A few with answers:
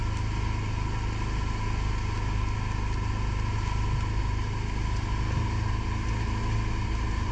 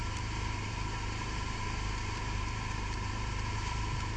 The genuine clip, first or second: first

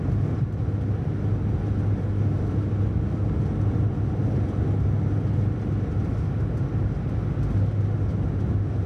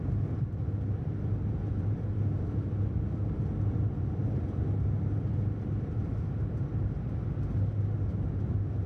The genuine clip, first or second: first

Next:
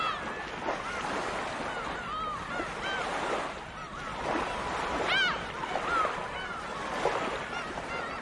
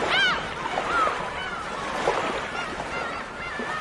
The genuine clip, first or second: first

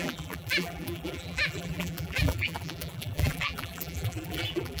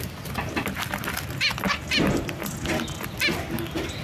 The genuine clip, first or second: second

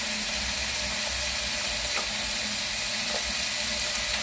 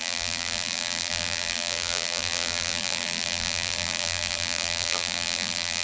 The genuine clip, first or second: first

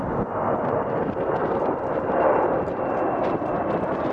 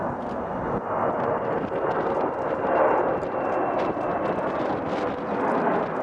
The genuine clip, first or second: second